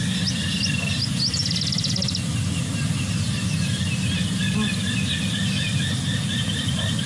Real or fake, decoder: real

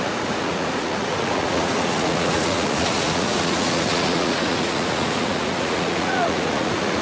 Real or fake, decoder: fake, vocoder, Vocos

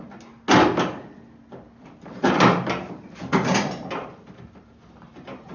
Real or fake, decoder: real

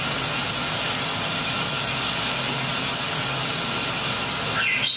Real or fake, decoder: real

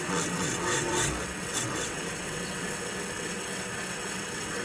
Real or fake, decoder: fake, vocoder, WaveNeXt